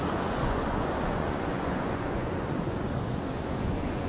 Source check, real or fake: fake